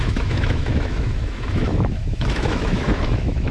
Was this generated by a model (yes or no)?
yes